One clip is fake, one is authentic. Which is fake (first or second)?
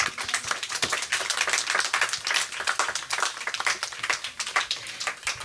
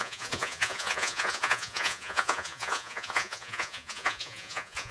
second